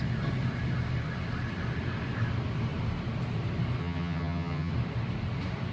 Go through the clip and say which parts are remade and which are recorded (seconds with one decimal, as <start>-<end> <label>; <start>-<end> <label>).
0.0-3.8 recorded; 3.8-4.7 remade; 4.7-5.7 recorded